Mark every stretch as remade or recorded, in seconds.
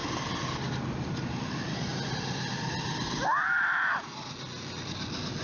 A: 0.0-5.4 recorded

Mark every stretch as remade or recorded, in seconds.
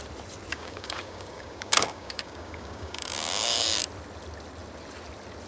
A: 0.0-0.5 recorded; 0.5-3.8 remade; 3.8-5.5 recorded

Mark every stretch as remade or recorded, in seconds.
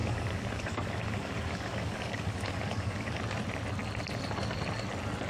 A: 0.0-3.2 remade; 3.2-5.3 recorded